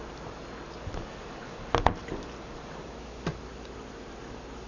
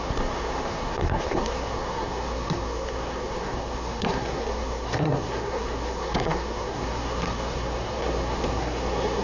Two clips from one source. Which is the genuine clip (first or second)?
first